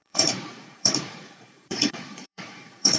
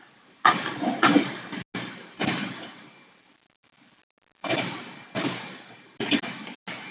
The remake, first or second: first